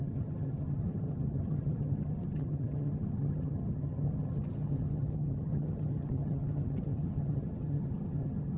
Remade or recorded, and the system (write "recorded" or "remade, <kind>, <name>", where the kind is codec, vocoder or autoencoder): remade, vocoder, HiFi-GAN